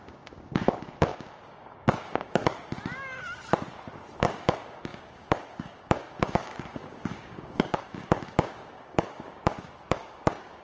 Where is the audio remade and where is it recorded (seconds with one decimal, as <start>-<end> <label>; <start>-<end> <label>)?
0.0-2.4 remade; 2.4-4.2 recorded; 4.2-10.6 remade